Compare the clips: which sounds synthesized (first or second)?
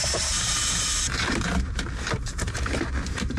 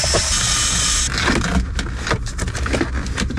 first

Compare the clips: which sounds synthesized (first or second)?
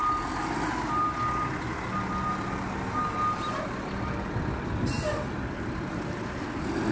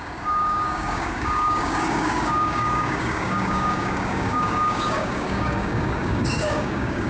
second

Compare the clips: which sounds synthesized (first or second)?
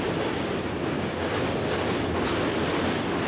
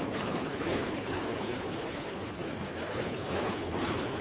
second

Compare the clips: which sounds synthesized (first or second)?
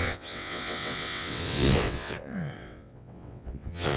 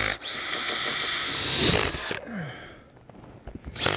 first